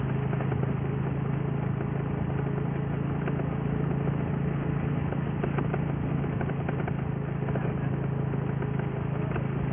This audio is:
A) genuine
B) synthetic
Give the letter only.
A